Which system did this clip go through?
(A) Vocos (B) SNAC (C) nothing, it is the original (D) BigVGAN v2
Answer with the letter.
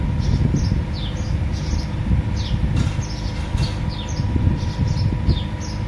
C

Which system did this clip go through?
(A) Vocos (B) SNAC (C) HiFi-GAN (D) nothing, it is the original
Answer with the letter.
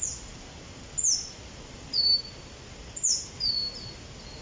D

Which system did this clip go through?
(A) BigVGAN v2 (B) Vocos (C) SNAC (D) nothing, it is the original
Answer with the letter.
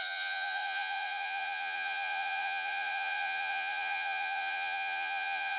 B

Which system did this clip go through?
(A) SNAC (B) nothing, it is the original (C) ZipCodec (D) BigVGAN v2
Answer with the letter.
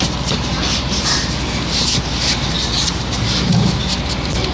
D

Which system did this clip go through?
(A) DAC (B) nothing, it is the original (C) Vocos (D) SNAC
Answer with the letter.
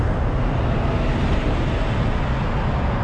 B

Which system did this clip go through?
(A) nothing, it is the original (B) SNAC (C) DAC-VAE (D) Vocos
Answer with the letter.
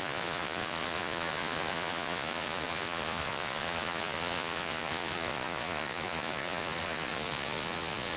D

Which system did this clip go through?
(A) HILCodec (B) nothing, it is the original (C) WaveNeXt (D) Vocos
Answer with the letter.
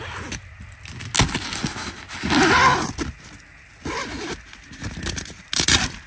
B